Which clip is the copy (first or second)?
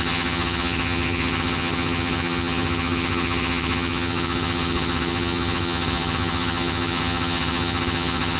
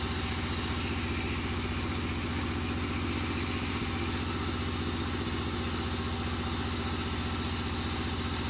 first